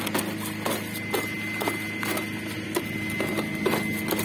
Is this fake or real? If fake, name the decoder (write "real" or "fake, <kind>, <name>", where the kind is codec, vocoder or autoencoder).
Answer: real